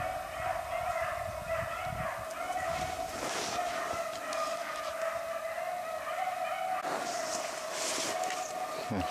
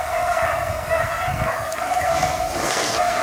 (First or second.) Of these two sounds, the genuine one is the first